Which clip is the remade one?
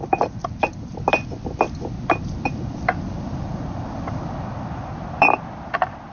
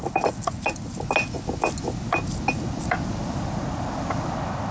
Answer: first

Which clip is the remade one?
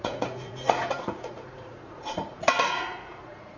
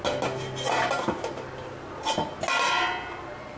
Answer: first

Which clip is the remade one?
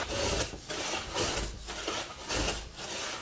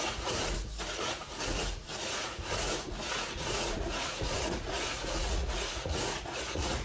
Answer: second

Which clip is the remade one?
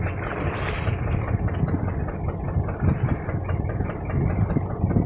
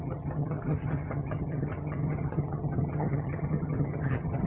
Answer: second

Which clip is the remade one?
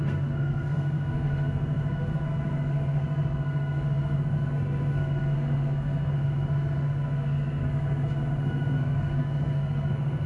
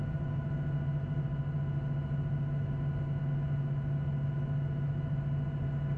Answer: first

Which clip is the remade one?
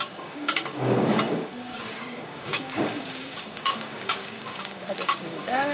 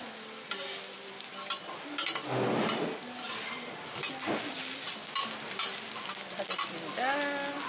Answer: first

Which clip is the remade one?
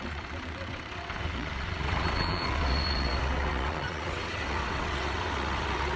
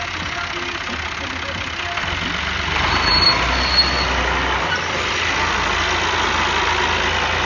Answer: first